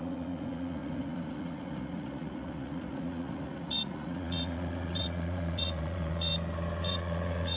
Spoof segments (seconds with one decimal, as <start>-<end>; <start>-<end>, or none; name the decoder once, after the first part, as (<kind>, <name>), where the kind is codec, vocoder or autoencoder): 0.0-6.3 (vocoder, Vocos); 6.8-7.6